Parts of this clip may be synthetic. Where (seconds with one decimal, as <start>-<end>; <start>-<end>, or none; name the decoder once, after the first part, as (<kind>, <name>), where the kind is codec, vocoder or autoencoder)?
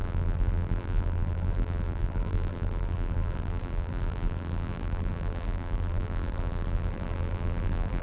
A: 0.0-8.0 (vocoder, BigVGAN v2)